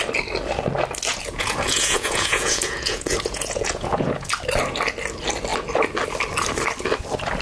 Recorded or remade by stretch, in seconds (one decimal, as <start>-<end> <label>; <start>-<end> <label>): 0.0-1.1 recorded; 1.1-4.3 remade; 4.3-7.4 recorded